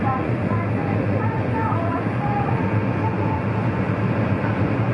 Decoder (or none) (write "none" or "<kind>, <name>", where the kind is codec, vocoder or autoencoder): vocoder, Vocos